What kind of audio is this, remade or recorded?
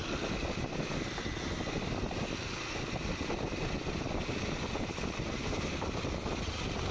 recorded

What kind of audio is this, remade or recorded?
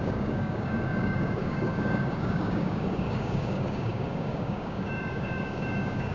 remade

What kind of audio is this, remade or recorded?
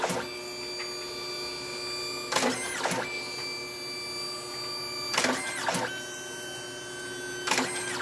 recorded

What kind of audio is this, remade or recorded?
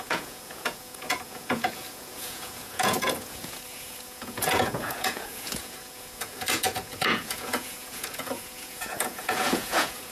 remade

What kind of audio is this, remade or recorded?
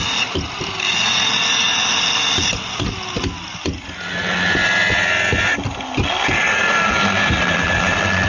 recorded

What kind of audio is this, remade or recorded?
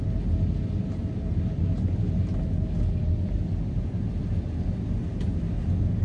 recorded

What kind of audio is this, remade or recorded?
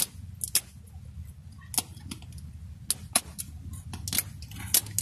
recorded